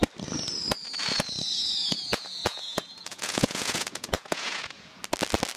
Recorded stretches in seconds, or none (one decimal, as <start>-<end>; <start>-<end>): 0.0-1.6; 5.0-5.6